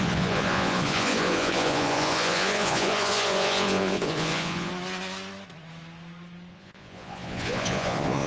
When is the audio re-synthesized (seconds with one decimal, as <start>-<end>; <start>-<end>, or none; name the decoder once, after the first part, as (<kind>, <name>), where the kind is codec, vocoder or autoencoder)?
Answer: 0.0-4.7 (vocoder, Vocos); 6.5-8.3